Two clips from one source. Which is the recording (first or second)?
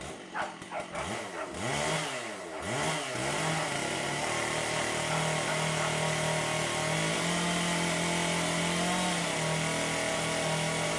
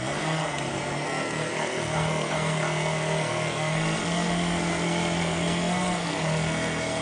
first